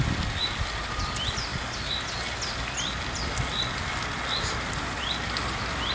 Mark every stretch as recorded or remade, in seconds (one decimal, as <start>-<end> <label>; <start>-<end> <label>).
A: 0.0-5.9 recorded